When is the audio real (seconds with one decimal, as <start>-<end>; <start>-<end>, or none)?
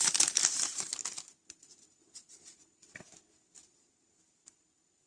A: 0.0-5.1